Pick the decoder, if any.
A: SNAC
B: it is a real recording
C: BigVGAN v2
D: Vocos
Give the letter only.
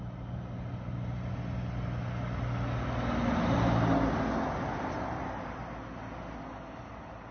B